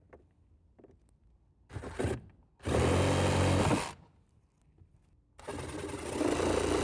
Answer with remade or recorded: recorded